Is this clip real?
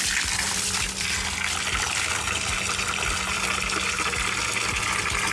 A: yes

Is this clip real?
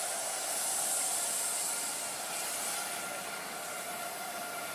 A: yes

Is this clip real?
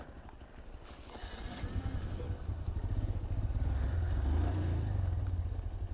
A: yes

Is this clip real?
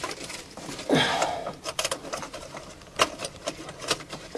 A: no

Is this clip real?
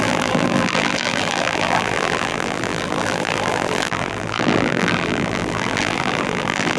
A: no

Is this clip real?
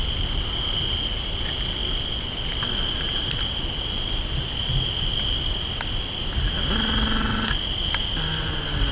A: yes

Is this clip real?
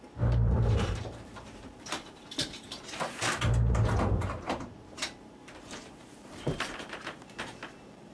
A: no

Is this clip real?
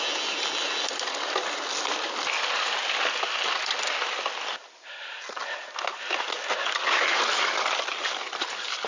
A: yes